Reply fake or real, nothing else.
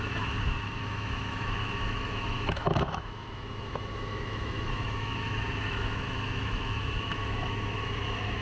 fake